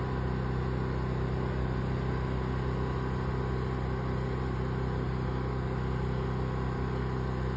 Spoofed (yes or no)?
no